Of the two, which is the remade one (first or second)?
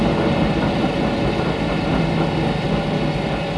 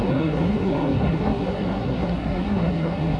second